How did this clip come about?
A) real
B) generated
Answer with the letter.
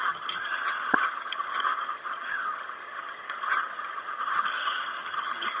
B